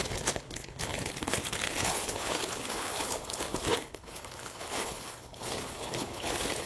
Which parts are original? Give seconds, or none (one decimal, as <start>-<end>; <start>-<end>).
none